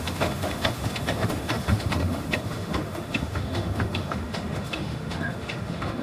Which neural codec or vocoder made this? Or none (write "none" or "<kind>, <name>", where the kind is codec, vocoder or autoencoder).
autoencoder, DAC-VAE